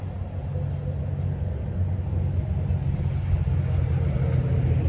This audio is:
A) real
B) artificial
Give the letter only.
A